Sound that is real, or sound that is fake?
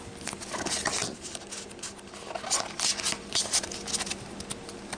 real